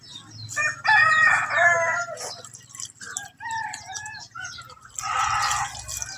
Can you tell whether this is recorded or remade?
recorded